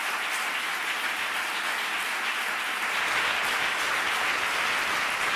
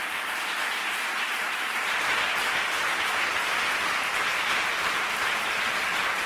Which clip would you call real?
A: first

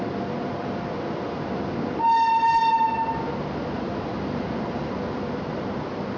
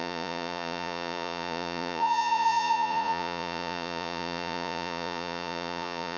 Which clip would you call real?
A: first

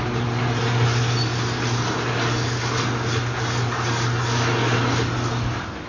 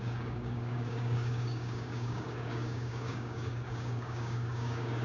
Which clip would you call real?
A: first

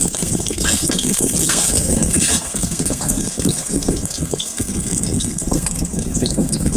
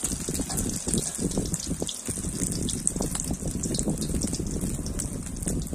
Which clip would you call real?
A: second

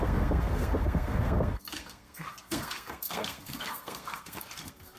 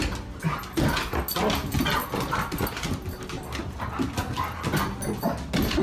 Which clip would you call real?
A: second